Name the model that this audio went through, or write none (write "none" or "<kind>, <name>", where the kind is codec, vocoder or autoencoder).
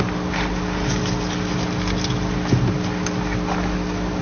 none